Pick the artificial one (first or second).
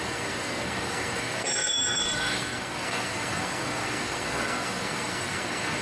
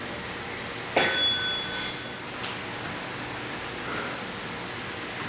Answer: first